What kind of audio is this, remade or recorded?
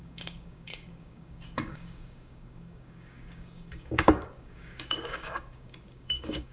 remade